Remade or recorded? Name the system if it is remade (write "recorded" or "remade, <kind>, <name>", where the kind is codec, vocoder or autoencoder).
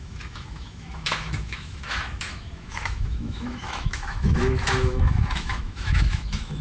remade, autoencoder, DAC-VAE